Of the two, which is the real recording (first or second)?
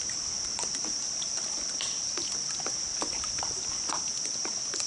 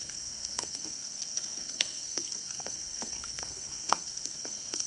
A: first